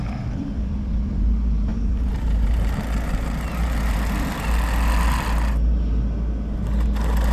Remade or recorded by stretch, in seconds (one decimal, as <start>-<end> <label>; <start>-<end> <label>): 0.0-1.7 recorded; 1.7-4.5 remade; 4.5-7.3 recorded